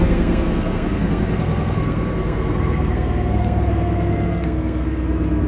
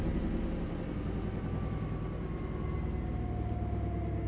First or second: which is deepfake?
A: first